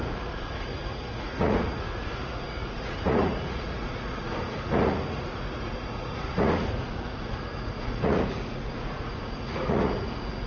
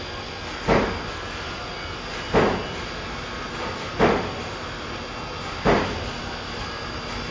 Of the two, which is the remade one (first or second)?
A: first